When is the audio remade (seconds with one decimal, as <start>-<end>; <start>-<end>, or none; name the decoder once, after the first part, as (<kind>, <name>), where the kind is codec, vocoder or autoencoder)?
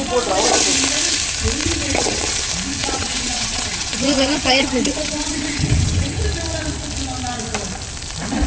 1.6-2.4 (vocoder, WaveNeXt); 2.8-6.2